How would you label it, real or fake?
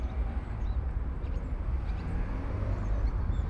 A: fake